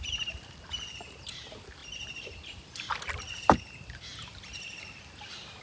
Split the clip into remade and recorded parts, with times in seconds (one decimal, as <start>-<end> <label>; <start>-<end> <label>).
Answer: 0.0-5.6 recorded